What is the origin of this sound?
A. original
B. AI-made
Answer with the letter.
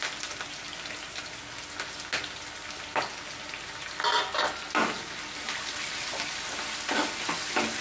A